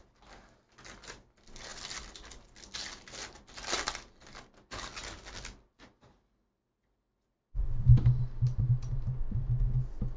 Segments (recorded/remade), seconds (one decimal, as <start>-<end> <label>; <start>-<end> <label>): 0.0-10.2 recorded